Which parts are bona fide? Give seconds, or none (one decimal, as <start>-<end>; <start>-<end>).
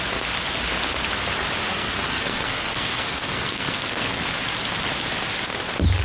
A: 0.0-1.7; 4.2-6.0